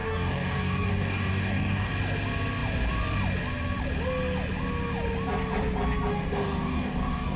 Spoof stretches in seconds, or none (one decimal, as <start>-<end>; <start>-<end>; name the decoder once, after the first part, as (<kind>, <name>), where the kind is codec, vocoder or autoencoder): 0.0-1.9 (codec, DAC); 6.1-7.4

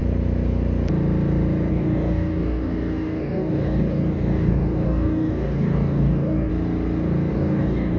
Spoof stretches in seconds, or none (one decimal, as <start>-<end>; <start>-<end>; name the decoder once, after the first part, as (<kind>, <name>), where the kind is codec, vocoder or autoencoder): 1.7-6.5 (codec, DAC); 7.3-8.0

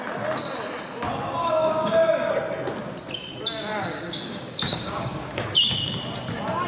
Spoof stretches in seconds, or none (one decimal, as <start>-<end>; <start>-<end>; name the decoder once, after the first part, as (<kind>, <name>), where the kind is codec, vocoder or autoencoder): 1.4-2.3 (codec, DAC); 3.7-6.0

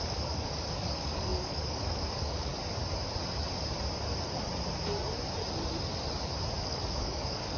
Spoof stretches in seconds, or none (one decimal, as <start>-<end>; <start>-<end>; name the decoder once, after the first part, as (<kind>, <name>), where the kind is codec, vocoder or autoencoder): 0.0-2.5 (codec, DAC); 6.6-7.6

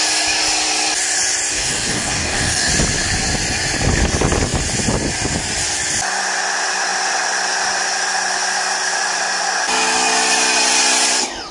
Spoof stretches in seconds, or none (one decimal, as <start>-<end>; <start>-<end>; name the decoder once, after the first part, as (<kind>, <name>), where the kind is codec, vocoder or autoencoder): 1.5-2.7 (codec, DAC)

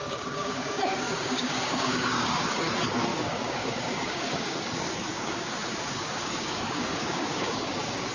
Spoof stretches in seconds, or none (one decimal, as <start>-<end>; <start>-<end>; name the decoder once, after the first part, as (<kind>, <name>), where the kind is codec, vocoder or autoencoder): 0.0-2.6 (codec, DAC); 3.1-8.1

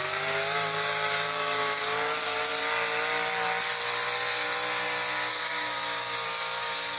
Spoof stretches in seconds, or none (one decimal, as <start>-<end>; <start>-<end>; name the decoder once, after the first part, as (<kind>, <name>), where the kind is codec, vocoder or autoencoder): 0.0-2.5 (codec, DAC); 5.3-7.0